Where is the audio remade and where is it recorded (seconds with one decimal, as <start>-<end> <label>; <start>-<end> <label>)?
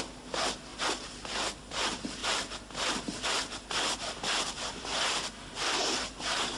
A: 0.0-0.7 remade; 0.7-1.6 recorded; 1.6-2.2 remade; 2.2-4.1 recorded; 4.1-6.6 remade